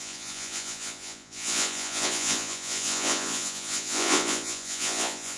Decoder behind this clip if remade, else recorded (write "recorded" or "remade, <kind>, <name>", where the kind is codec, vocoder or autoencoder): remade, vocoder, Vocos